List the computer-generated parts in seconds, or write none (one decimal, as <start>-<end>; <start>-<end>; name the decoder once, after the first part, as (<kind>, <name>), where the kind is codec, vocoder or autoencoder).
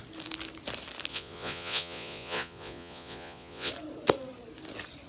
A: 1.1-3.7 (vocoder, Vocos)